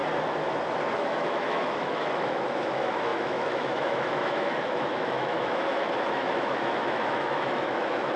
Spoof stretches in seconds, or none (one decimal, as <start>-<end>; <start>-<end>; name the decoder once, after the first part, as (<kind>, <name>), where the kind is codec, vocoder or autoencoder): 0.9-8.2 (autoencoder, DAC-VAE)